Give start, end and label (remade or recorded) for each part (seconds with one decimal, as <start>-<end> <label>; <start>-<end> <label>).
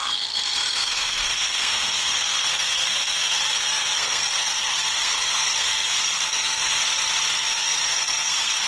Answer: 0.0-6.7 remade; 6.7-7.3 recorded; 7.3-8.7 remade